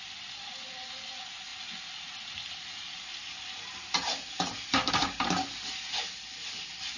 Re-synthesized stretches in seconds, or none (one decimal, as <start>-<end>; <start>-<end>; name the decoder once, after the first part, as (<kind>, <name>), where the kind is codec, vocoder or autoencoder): none